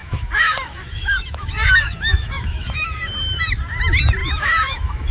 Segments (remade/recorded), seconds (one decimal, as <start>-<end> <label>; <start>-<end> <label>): 0.0-3.1 remade; 3.1-4.2 recorded; 4.2-5.1 remade